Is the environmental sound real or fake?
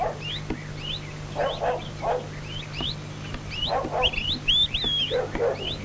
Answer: real